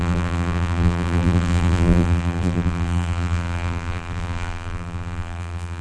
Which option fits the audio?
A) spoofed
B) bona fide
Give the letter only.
A